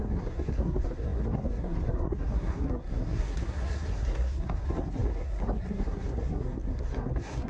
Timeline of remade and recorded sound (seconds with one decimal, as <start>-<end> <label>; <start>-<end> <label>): 0.0-7.5 remade